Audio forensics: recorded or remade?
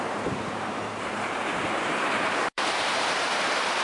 remade